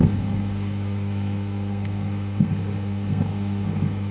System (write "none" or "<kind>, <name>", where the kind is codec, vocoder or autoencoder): codec, SNAC